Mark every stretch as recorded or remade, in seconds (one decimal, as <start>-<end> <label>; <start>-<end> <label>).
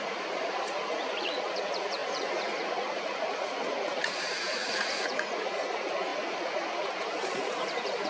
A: 0.0-8.1 remade